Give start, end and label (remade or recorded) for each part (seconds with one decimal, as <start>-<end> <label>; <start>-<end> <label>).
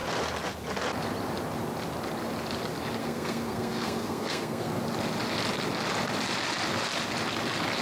0.0-3.0 recorded; 3.0-4.8 remade; 4.8-7.8 recorded